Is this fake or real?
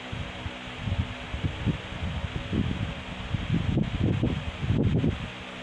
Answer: real